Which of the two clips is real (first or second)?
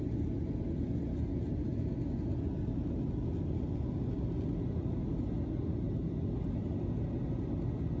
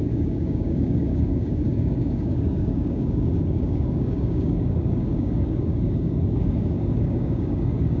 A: first